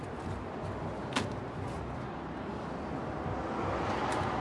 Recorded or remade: recorded